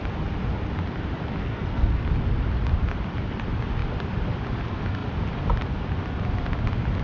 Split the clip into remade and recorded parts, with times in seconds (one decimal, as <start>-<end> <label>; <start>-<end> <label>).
0.0-1.4 recorded; 1.4-2.0 remade; 2.0-7.0 recorded